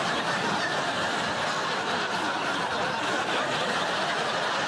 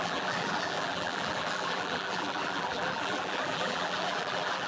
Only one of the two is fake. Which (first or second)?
second